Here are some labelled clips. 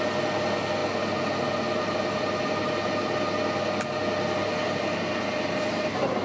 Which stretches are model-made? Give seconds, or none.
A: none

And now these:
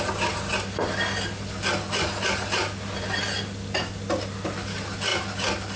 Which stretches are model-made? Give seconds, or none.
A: none

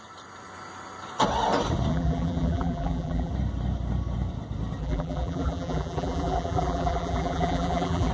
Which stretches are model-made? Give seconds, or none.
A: 1.9-3.3 (vocoder, BigVGAN v2); 4.8-8.1

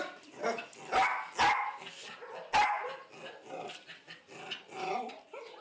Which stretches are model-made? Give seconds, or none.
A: none

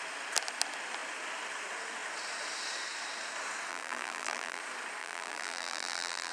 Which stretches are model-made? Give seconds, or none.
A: 3.7-4.6 (vocoder, BigVGAN v2); 5.0-6.3